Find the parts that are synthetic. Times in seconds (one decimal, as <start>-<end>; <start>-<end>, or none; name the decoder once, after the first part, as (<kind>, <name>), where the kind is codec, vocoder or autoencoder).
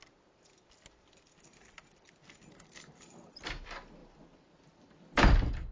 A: 4.0-5.7 (vocoder, BigVGAN v2)